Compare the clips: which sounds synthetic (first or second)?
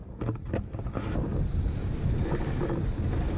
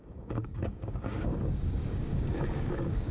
second